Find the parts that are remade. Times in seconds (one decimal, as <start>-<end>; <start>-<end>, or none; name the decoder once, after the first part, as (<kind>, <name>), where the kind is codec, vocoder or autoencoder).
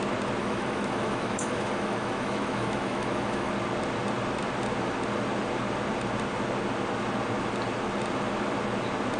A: 0.4-3.5 (autoencoder, DAC-VAE)